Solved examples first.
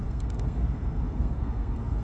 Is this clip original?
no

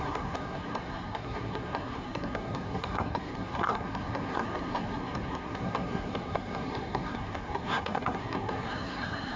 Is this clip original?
no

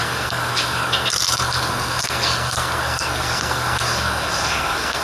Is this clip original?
no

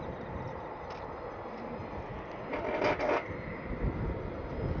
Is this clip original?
yes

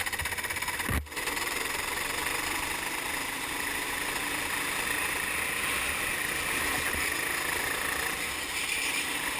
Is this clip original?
yes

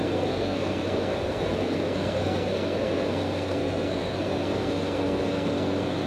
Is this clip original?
no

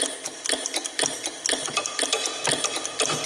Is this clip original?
yes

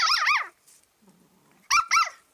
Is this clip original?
yes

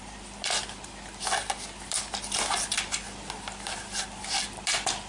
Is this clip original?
yes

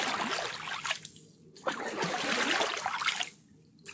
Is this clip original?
yes